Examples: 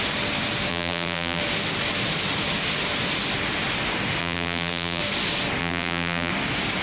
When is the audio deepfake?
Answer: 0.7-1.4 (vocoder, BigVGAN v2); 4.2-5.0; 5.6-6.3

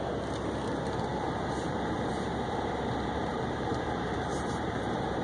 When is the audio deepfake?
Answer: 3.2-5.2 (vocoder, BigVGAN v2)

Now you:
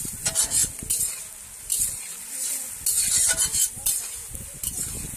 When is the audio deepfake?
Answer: none

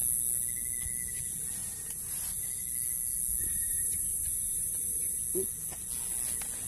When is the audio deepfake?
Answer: 1.6-2.4 (vocoder, BigVGAN v2); 3.4-5.2

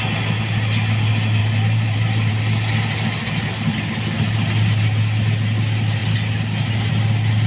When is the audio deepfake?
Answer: 1.4-2.3 (vocoder, BigVGAN v2)

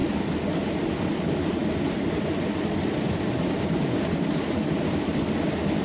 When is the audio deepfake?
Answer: none